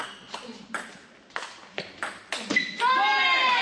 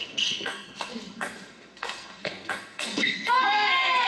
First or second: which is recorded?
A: first